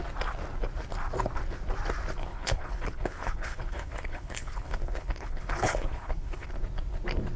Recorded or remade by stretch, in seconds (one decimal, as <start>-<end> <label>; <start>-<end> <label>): 0.0-2.2 recorded; 2.2-6.5 remade; 6.5-7.4 recorded